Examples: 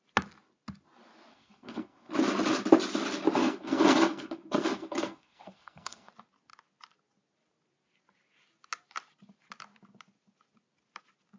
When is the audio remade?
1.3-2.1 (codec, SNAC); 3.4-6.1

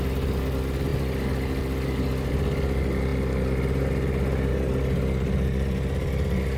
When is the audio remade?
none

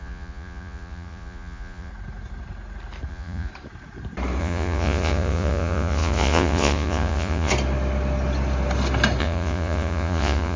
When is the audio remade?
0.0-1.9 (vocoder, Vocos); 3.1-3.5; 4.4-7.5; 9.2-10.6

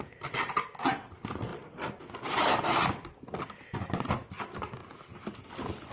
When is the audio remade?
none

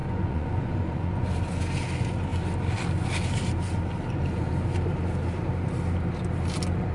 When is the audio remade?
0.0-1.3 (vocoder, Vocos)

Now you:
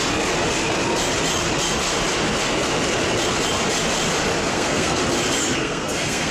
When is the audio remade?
4.5-5.0 (codec, SNAC); 5.4-6.3

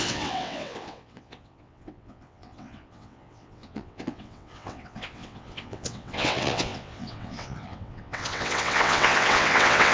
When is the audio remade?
0.0-9.9 (vocoder, WaveNeXt)

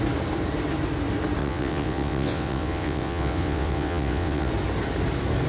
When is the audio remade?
1.4-4.5 (vocoder, WaveNeXt)